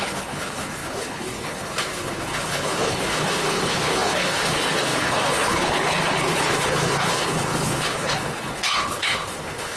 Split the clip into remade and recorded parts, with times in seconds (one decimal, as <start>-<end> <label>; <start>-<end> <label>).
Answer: 0.0-9.8 remade